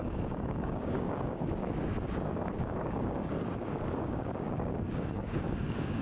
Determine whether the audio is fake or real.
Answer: fake